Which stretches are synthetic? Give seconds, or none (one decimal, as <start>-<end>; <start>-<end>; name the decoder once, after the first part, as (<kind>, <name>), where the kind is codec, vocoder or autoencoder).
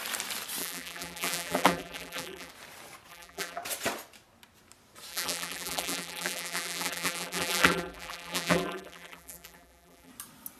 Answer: 0.6-2.5 (vocoder, BigVGAN v2); 3.1-3.6; 5.1-10.1